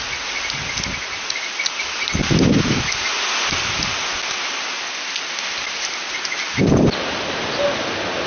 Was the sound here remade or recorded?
recorded